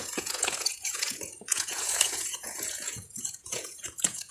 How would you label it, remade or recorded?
remade